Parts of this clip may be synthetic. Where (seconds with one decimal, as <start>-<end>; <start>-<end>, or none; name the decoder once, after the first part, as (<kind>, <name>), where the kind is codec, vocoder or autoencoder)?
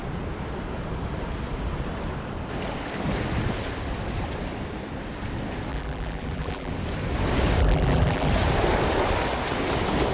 5.7-6.7 (vocoder, BigVGAN v2); 7.6-8.3